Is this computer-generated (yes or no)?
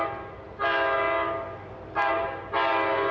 no